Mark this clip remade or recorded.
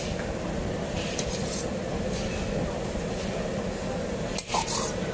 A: recorded